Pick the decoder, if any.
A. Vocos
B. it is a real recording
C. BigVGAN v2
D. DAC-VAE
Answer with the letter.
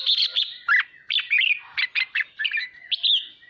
B